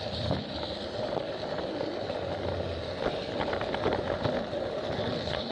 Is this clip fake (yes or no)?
no